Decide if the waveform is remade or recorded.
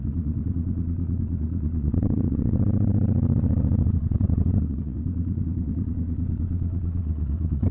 remade